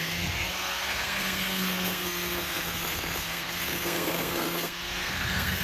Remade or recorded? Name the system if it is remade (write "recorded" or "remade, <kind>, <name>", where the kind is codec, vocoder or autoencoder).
remade, codec, SNAC